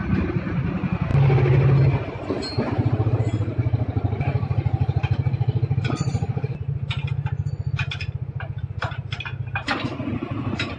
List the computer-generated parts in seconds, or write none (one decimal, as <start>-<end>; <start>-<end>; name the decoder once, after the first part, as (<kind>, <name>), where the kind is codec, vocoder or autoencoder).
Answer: none